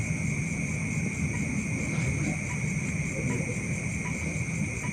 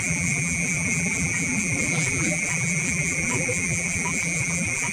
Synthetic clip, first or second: second